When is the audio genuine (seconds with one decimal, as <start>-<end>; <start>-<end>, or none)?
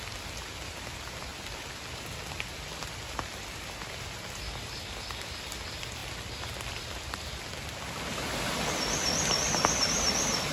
0.0-10.5